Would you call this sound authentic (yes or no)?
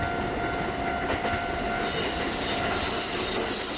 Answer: yes